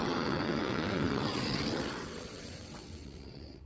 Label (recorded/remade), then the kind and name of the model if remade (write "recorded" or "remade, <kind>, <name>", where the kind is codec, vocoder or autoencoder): remade, vocoder, WaveNeXt